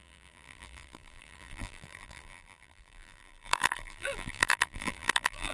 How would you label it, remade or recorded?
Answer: remade